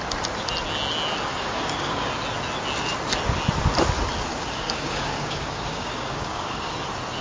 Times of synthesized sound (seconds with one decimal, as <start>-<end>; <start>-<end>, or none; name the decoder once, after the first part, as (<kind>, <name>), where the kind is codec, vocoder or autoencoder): 1.3-2.1 (codec, DAC); 4.3-6.7